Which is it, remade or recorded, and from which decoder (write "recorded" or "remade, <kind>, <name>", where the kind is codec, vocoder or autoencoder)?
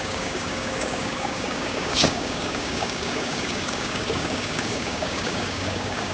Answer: remade, codec, DAC